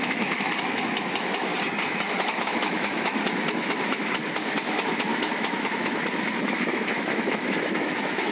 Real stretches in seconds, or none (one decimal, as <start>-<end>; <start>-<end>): 1.5-2.1

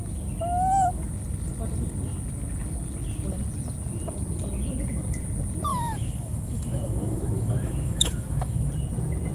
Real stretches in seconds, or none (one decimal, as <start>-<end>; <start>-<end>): 0.0-5.7; 8.7-9.3

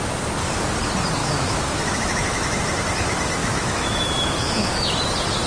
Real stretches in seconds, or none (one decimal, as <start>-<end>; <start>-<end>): 0.0-1.2; 2.6-3.4; 4.9-5.5

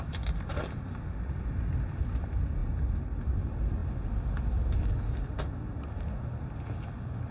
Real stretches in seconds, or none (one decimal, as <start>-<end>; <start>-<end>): 0.0-7.3

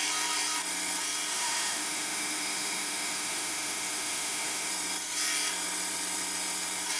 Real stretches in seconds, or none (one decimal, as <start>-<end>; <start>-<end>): 0.0-1.3; 4.7-7.0